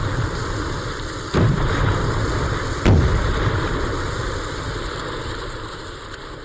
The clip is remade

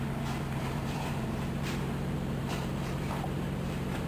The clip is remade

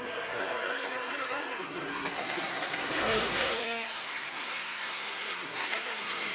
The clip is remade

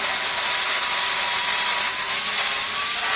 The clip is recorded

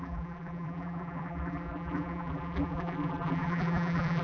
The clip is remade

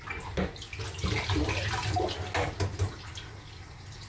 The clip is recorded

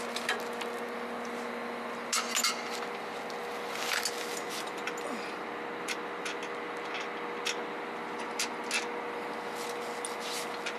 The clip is recorded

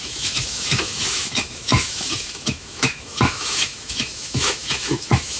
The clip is remade